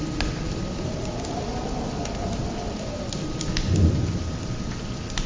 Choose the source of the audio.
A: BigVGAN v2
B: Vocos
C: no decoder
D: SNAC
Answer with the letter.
C